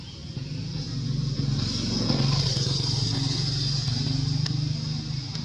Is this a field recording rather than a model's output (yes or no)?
yes